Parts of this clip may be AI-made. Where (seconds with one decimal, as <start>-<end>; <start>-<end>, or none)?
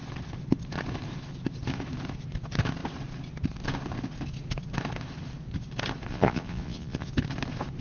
6.1-7.1